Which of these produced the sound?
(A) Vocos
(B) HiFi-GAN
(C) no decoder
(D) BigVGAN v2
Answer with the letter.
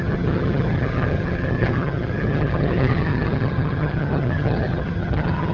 B